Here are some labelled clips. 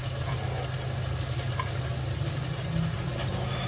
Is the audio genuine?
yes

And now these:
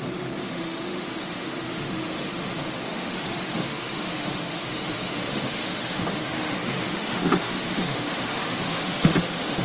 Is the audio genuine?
no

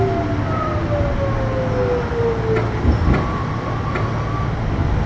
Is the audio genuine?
yes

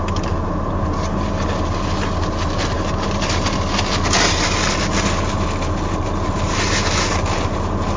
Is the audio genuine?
yes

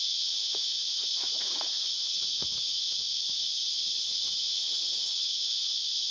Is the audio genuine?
no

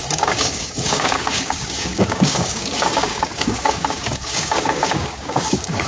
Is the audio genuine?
no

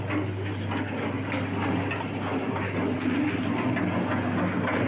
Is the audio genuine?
yes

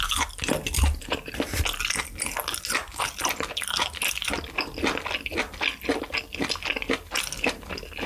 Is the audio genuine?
yes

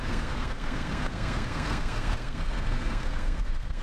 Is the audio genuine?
no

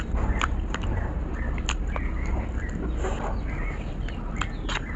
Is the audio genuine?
yes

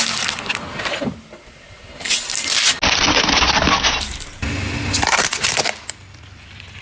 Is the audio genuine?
yes